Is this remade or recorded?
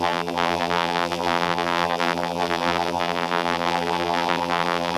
remade